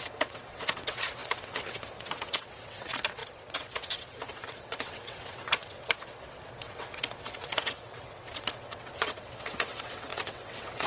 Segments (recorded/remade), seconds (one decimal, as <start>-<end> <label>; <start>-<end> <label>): 0.0-10.9 remade